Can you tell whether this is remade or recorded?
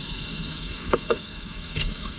remade